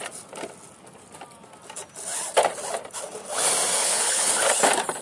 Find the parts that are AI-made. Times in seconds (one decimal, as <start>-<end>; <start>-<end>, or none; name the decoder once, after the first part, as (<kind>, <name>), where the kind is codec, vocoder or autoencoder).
3.8-4.3 (codec, HILCodec)